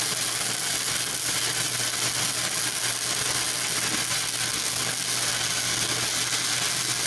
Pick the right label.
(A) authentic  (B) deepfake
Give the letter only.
A